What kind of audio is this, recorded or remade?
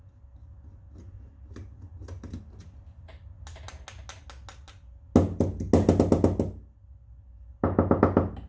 recorded